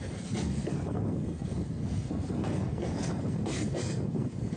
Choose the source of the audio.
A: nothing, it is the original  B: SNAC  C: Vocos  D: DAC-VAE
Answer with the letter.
B